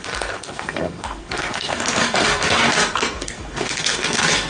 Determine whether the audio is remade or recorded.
remade